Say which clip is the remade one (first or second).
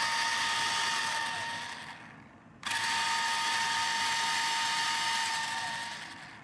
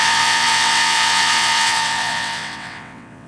second